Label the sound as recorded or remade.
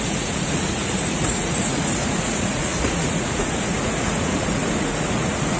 remade